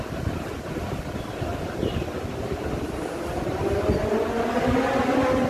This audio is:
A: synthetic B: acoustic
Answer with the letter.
B